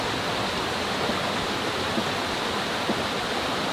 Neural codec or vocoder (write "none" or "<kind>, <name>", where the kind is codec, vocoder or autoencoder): none